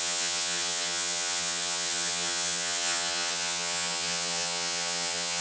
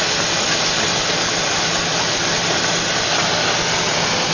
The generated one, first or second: first